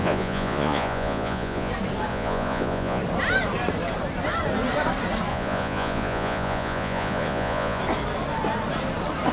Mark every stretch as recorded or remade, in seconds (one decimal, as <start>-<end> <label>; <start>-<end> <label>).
0.0-1.7 remade; 1.7-2.1 recorded; 2.1-3.0 remade; 3.0-5.3 recorded; 5.3-7.8 remade; 7.8-9.3 recorded